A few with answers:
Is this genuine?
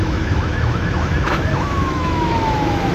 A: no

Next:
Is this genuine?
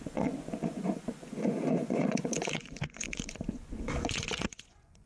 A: no